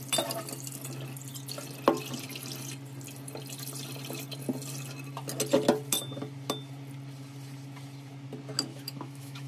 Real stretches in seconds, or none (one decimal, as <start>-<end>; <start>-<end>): 0.0-8.7